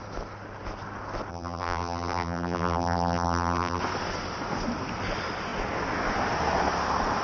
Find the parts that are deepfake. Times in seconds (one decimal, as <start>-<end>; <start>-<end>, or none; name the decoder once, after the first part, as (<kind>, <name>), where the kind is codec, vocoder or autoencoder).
1.3-3.8 (vocoder, BigVGAN v2)